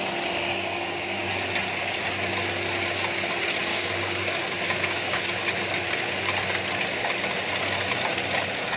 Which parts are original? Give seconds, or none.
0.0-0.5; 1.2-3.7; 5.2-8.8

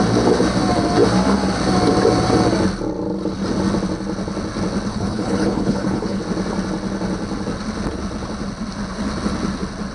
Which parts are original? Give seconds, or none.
0.0-4.9; 6.2-9.9

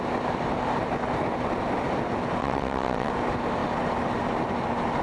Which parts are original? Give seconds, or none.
0.0-2.4; 3.1-5.0

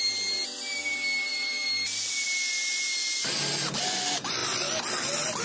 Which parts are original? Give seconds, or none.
0.0-1.3; 2.1-5.4

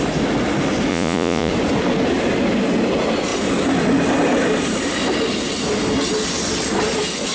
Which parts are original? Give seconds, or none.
0.0-0.9; 1.5-7.3

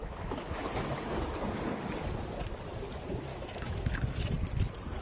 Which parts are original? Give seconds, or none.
0.6-3.3; 4.2-5.0